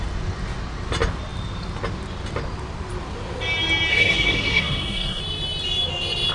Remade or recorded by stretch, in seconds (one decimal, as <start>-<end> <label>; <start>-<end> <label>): 0.0-3.9 recorded; 3.9-5.2 remade; 5.2-6.3 recorded